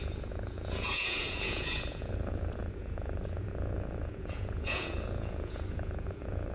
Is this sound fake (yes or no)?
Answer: yes